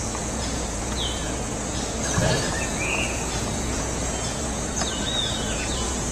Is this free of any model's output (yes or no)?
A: no